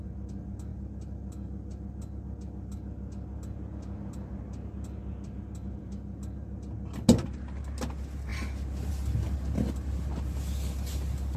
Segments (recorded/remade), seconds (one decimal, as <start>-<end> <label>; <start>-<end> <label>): 0.0-11.4 recorded